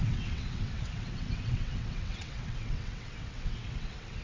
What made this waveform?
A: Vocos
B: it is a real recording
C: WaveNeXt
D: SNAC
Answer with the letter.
C